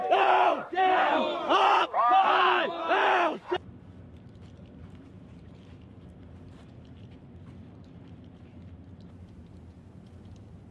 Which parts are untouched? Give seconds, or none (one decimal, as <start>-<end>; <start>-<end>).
1.1-4.8